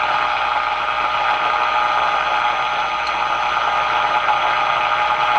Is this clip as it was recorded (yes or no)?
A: yes